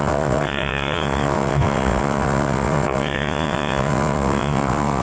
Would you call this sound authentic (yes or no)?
no